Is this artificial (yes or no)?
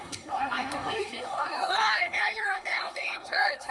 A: yes